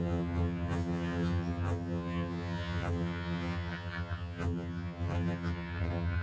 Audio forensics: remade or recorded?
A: remade